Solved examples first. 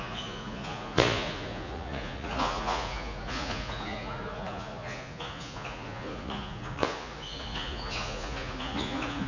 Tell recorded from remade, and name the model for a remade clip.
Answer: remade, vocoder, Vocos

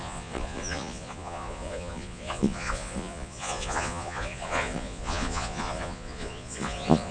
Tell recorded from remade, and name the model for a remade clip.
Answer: remade, vocoder, Vocos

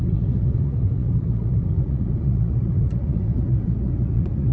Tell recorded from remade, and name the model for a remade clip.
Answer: remade, vocoder, Vocos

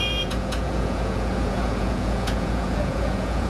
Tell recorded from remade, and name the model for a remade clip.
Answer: remade, vocoder, Vocos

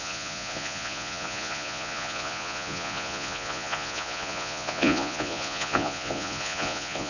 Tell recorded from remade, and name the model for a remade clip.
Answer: remade, vocoder, Vocos